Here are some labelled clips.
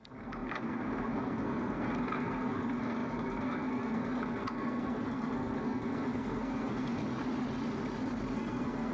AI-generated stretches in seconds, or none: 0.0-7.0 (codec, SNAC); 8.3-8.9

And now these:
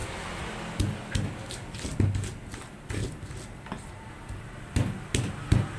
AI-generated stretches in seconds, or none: none

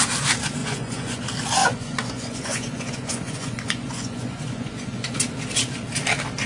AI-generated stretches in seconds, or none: 0.6-1.2 (vocoder, Vocos); 1.6-5.2

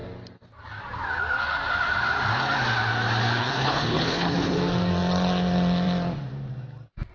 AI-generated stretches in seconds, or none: 3.4-4.6 (codec, HILCodec)

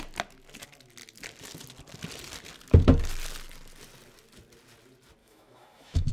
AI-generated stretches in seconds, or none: 5.2-6.1 (autoencoder, DAC-VAE)

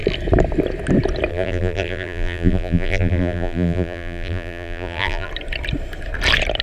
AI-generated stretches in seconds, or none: 1.3-5.3 (vocoder, BigVGAN v2)

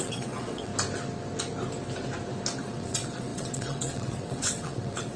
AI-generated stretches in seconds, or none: 0.0-0.7 (vocoder, WaveNeXt); 2.6-5.2